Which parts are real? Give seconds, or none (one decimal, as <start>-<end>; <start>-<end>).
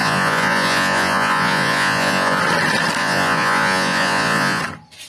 2.4-3.0; 4.6-5.1